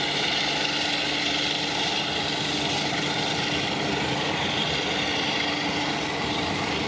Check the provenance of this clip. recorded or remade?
recorded